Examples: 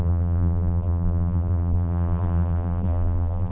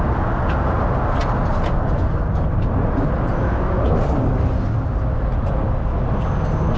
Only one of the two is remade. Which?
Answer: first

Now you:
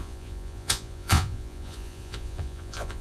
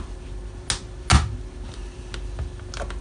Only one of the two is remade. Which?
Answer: first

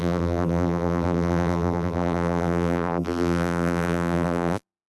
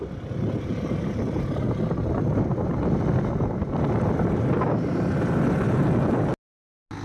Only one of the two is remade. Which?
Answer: first